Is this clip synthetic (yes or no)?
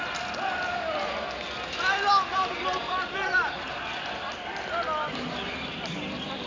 no